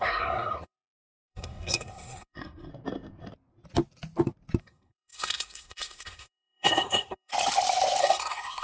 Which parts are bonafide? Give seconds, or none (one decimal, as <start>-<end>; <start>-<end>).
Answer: 2.7-4.6; 7.3-8.0